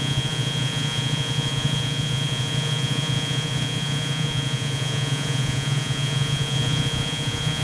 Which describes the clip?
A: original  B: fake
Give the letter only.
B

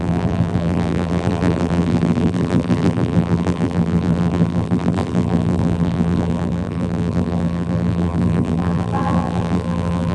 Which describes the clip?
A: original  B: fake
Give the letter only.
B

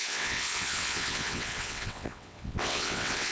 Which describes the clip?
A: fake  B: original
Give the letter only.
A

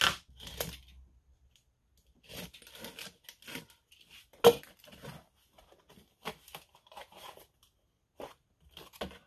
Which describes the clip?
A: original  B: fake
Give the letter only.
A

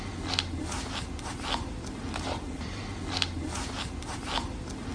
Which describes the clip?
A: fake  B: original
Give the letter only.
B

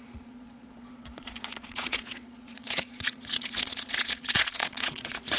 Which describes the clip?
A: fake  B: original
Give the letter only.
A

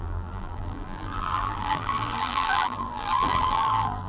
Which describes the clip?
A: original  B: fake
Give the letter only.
B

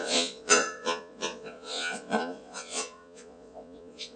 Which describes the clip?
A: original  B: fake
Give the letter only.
B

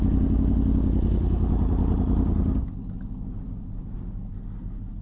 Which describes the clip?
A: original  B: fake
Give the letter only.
A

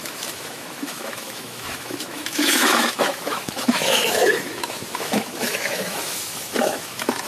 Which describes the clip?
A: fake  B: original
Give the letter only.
A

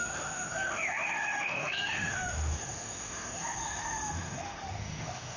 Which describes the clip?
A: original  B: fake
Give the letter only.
B